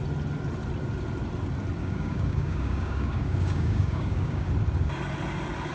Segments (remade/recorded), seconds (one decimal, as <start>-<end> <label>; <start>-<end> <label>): 0.0-1.8 recorded; 1.8-4.5 remade; 4.5-5.7 recorded